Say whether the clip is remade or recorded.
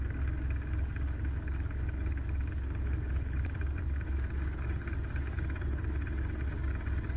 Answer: remade